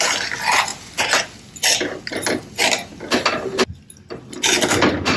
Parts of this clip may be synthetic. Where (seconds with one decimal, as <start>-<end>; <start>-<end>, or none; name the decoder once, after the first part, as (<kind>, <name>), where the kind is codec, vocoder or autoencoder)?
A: none